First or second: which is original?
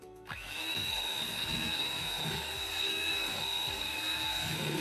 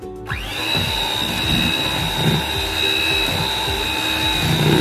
second